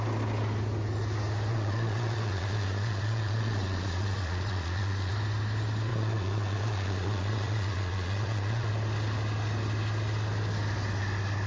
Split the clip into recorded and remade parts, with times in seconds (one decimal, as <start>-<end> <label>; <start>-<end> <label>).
0.0-1.5 recorded; 1.5-5.1 remade; 5.1-5.9 recorded; 5.9-8.7 remade; 8.7-11.5 recorded